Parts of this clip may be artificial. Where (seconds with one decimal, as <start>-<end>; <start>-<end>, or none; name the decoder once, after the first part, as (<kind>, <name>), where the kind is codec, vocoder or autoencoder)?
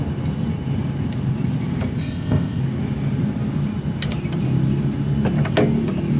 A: 2.0-2.6 (codec, ZipCodec)